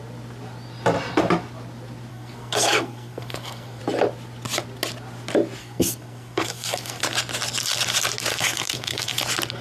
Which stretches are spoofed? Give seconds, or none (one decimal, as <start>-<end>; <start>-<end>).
2.1-3.8; 5.6-7.0; 8.3-9.2